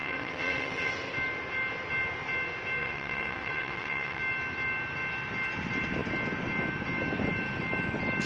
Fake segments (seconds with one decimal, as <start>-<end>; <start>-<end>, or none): 0.0-0.9; 2.8-4.2